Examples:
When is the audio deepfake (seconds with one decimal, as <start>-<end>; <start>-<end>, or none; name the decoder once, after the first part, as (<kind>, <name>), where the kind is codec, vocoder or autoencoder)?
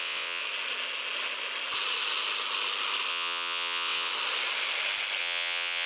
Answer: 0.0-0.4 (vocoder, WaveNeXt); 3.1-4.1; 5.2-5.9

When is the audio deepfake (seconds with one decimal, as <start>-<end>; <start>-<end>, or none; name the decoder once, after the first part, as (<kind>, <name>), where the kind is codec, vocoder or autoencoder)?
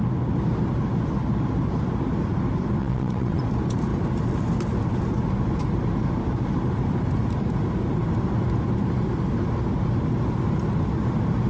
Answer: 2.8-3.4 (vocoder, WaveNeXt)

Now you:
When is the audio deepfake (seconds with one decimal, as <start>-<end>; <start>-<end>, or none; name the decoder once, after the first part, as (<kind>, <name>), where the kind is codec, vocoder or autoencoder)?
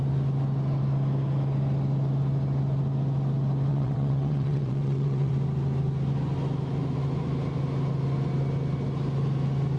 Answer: 3.7-5.3 (vocoder, WaveNeXt)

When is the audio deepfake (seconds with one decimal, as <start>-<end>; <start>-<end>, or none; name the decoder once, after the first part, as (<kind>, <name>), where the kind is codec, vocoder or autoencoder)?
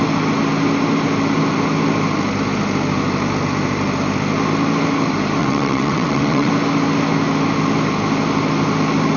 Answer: 5.4-6.5 (vocoder, WaveNeXt)